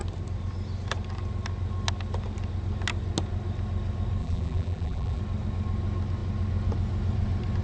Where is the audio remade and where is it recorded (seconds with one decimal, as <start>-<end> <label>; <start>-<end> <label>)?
0.0-4.2 recorded; 4.2-5.2 remade; 5.2-7.6 recorded